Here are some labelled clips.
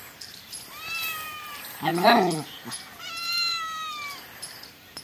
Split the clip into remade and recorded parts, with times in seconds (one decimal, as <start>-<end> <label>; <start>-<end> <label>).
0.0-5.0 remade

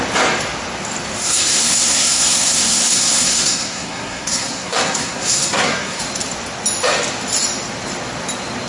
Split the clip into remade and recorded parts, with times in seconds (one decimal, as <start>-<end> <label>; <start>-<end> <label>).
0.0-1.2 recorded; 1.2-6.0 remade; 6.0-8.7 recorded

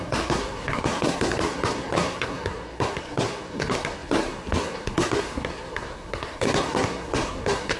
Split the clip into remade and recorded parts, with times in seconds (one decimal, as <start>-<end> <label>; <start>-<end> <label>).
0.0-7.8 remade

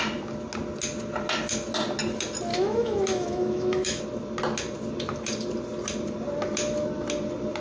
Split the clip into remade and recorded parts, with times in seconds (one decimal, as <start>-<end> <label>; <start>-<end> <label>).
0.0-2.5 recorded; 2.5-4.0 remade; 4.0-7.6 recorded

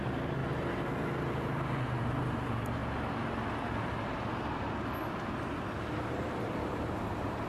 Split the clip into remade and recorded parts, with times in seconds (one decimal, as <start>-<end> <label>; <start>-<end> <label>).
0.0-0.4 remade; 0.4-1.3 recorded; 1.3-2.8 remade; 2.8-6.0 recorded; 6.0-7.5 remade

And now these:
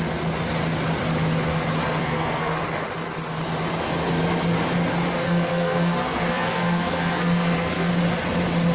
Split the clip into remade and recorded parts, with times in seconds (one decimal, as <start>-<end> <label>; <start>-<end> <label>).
0.0-2.0 recorded; 2.0-2.6 remade; 2.6-5.2 recorded; 5.2-7.9 remade; 7.9-8.7 recorded

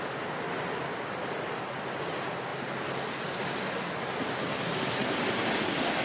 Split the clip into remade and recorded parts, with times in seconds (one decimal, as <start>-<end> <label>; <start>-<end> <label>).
0.0-6.0 recorded

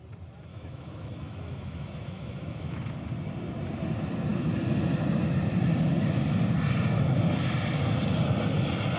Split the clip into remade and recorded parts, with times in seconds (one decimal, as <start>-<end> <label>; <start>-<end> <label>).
0.0-0.5 recorded; 0.5-2.9 remade; 2.9-9.0 recorded